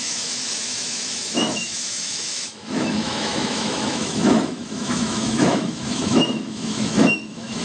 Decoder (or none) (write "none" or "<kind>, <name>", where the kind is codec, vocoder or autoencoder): autoencoder, DAC-VAE